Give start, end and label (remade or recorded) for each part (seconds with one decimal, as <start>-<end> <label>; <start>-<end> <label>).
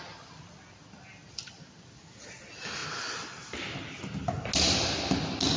0.0-5.6 recorded